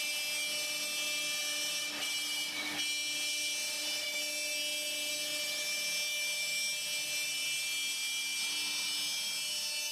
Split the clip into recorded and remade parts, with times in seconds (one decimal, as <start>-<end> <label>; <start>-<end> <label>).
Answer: 0.0-1.4 recorded; 1.4-2.0 remade; 2.0-9.9 recorded